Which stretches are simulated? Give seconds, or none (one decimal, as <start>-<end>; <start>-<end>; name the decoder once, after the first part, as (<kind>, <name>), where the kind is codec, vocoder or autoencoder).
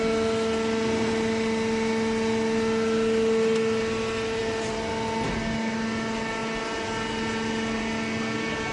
4.4-4.9 (vocoder, BigVGAN v2)